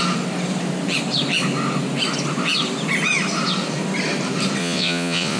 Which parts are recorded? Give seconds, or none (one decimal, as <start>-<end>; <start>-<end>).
0.0-4.6